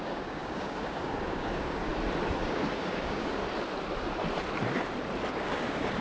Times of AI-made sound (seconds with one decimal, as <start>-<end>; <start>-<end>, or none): 0.0-1.9; 2.4-3.4; 5.3-6.0